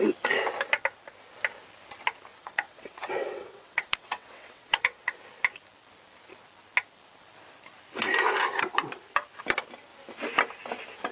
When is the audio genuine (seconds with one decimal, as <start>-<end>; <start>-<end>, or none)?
0.0-2.3; 5.2-11.1